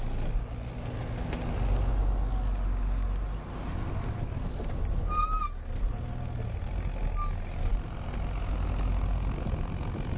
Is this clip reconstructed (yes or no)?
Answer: no